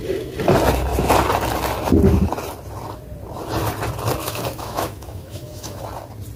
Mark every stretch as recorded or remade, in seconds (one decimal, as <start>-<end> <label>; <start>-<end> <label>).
0.0-4.2 recorded; 4.2-5.8 remade; 5.8-6.4 recorded